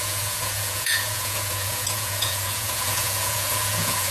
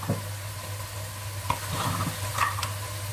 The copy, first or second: first